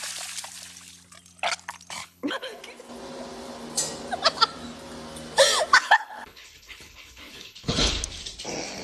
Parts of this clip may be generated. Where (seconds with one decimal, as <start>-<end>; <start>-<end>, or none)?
2.0-2.6; 5.8-7.9